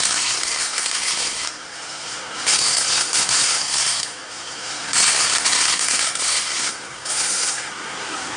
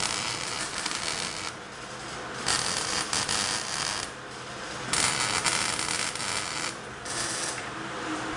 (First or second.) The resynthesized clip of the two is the first